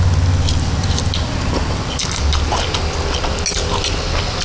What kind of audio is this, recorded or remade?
recorded